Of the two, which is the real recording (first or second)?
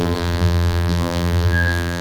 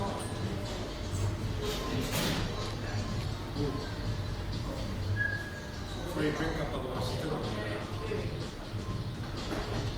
second